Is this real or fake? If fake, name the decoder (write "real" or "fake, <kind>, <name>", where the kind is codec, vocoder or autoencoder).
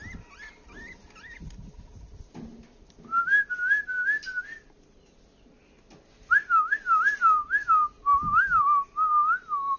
real